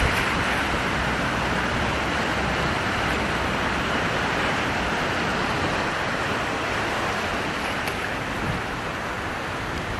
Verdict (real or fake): real